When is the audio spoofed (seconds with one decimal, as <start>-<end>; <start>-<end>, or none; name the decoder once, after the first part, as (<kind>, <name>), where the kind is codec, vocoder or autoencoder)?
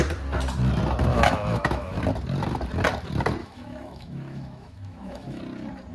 1.1-2.0 (autoencoder, DAC-VAE); 3.4-5.4